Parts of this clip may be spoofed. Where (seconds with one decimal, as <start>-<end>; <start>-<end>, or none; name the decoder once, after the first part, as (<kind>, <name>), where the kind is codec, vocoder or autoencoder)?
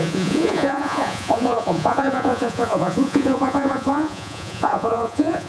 0.0-5.5 (vocoder, Vocos)